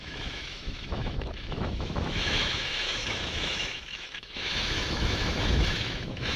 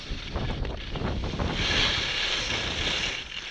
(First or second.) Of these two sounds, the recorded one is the second